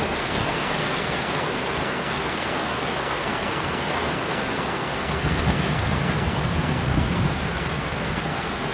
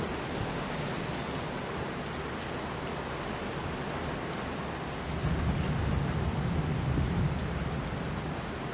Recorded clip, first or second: second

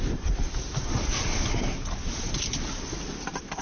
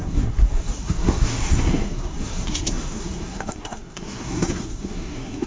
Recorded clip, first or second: first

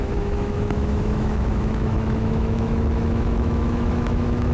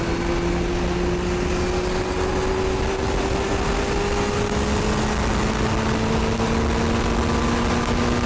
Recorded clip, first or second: second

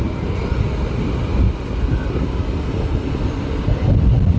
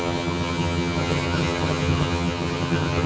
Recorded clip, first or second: first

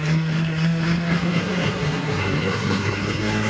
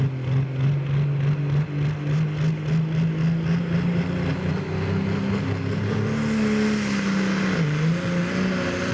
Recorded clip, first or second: second